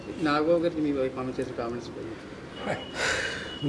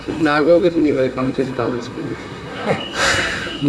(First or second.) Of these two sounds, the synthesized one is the second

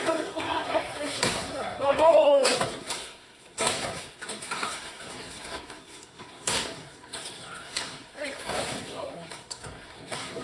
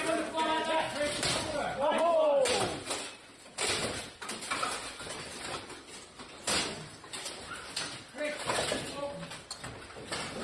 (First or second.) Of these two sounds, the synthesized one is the first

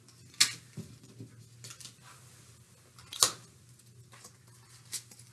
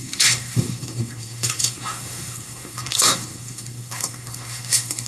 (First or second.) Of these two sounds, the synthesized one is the second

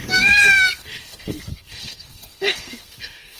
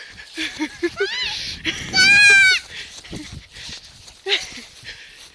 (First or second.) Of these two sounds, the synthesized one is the first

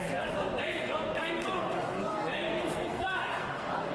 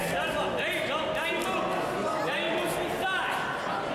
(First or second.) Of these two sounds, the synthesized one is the first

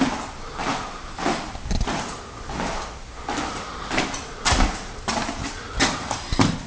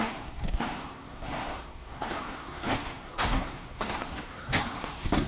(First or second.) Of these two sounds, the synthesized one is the second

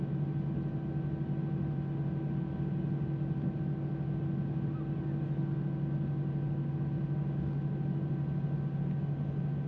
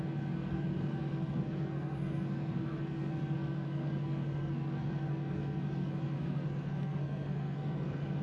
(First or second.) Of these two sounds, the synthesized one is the second